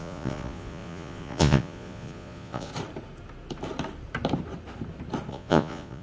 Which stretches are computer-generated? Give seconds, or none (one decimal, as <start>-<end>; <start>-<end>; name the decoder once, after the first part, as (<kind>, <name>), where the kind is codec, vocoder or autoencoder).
0.0-2.7 (vocoder, Vocos); 5.3-6.0